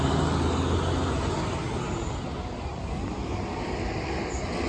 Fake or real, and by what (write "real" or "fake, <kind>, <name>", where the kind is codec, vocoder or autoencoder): real